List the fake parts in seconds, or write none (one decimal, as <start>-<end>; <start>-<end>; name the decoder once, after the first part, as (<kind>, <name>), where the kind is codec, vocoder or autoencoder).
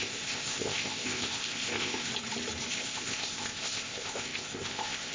0.0-2.1 (codec, ZipCodec); 2.7-5.1